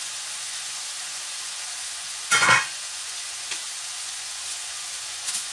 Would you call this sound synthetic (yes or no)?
yes